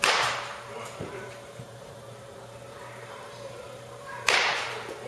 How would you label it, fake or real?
fake